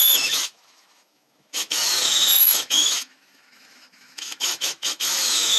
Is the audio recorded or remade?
remade